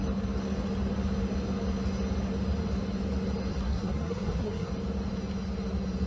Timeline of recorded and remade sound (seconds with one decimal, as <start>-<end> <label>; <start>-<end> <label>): 0.0-3.5 recorded; 3.5-4.7 remade; 4.7-6.1 recorded

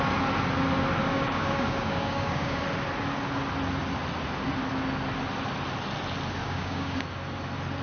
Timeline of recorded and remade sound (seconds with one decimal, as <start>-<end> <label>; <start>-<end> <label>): 0.0-1.1 recorded; 1.1-2.6 remade; 2.6-6.4 recorded; 6.4-7.0 remade; 7.0-7.8 recorded